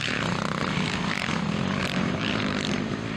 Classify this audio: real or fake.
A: fake